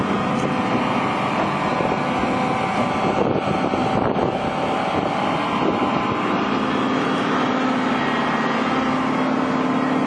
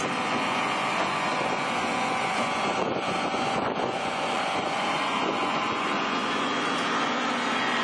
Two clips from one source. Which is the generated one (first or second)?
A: second